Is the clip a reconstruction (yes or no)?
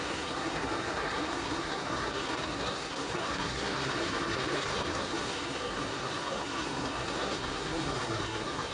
yes